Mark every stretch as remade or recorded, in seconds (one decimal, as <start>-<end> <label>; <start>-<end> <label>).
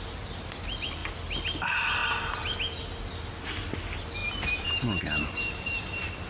0.0-4.2 recorded; 4.2-6.3 remade